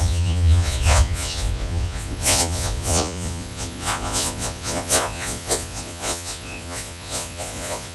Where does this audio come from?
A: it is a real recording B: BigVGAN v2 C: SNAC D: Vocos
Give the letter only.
D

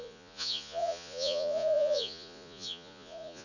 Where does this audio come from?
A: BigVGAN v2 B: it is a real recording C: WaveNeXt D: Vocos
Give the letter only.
D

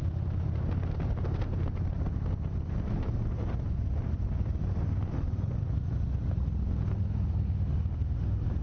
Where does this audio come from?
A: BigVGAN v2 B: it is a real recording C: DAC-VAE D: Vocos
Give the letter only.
B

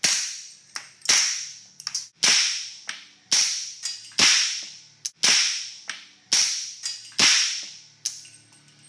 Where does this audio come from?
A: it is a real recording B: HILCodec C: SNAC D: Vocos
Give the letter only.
A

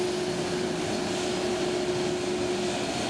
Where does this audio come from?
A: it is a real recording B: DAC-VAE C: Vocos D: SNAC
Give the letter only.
A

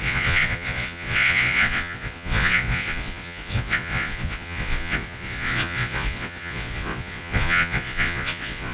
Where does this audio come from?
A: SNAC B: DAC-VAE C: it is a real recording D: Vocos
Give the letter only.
D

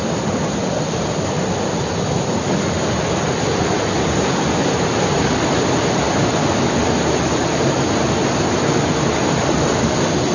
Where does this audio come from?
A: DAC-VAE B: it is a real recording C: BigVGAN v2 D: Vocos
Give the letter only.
B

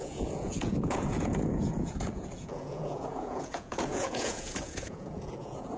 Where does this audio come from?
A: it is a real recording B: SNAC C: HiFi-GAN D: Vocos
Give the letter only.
D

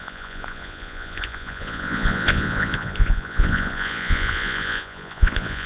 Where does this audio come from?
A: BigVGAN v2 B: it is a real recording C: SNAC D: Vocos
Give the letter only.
D